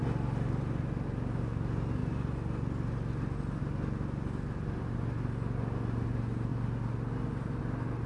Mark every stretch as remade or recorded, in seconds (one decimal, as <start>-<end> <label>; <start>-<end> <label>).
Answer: 0.0-8.1 recorded